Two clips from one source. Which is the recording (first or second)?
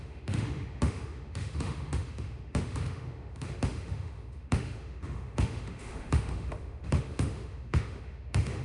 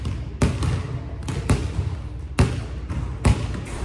second